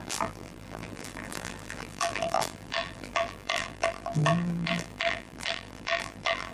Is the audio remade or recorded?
remade